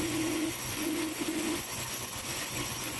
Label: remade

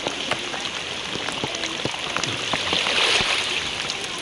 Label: recorded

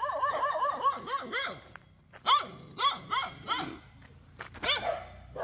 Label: recorded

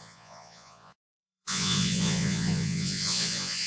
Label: remade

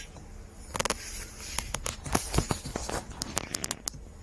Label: recorded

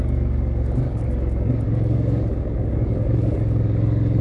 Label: remade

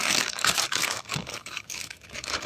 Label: remade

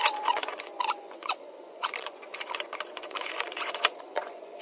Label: remade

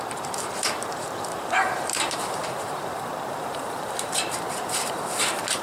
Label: remade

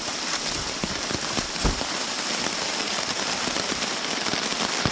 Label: recorded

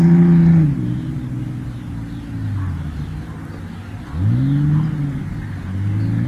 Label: recorded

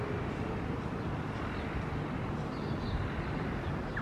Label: recorded